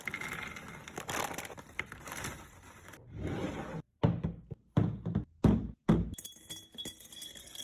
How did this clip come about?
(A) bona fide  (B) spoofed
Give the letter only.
A